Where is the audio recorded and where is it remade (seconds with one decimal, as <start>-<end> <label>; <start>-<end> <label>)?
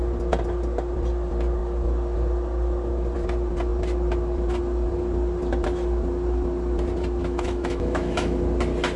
0.0-7.2 recorded; 7.2-8.4 remade; 8.4-9.0 recorded